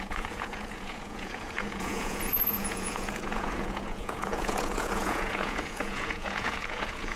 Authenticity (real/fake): fake